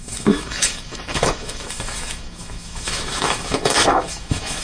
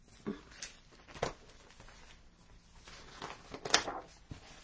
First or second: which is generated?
first